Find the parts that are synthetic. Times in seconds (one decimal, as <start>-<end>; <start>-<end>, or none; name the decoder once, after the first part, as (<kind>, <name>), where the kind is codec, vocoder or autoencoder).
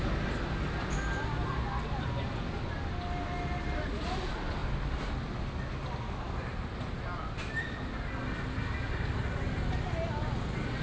none